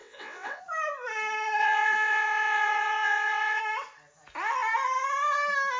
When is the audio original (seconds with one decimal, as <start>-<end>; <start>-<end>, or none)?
0.6-1.6; 3.6-5.8